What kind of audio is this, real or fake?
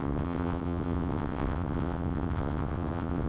fake